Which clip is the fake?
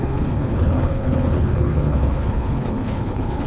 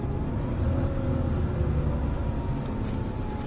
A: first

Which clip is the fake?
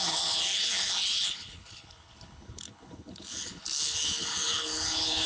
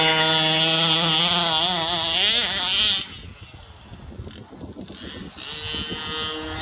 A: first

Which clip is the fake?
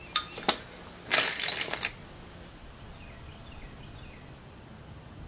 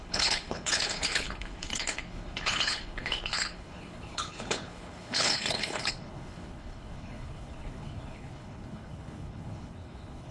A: second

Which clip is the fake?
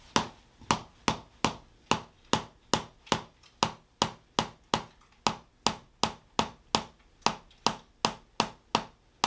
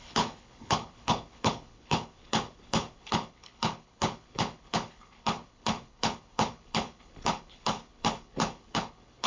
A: second